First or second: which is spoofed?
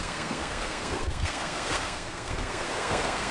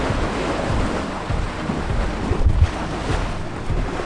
first